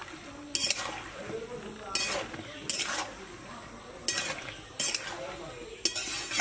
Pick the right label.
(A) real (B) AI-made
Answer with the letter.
A